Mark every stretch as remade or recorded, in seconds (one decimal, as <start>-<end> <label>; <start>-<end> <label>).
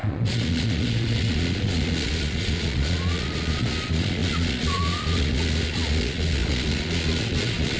0.0-7.8 remade